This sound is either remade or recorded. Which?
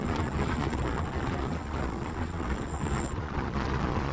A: remade